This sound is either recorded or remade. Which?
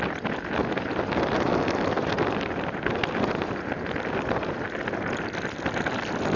recorded